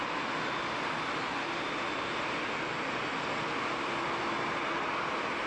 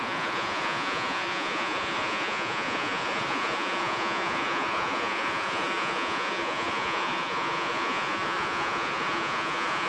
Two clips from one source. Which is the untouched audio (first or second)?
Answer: first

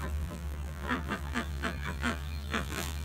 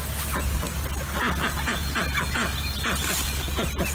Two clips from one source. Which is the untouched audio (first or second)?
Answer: second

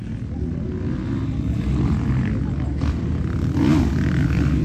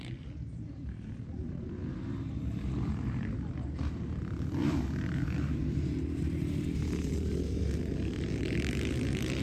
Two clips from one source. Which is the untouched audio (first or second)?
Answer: first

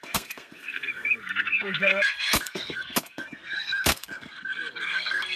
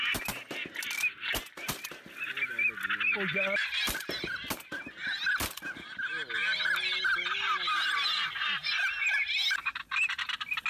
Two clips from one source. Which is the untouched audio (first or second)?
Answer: second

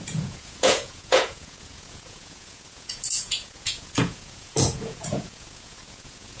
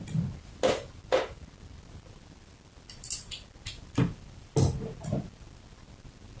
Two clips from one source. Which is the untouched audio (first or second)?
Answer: second